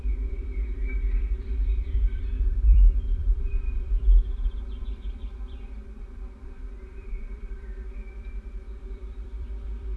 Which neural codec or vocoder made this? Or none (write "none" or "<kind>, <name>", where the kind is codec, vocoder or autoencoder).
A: vocoder, BigVGAN v2